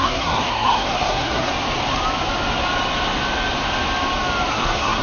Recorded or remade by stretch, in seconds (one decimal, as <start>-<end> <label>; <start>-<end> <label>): 0.0-1.5 remade; 1.5-4.5 recorded; 4.5-5.0 remade